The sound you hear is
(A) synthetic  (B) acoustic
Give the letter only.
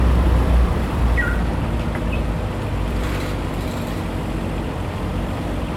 A